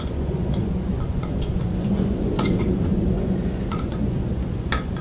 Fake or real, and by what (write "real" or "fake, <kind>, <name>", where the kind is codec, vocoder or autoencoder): fake, vocoder, Vocos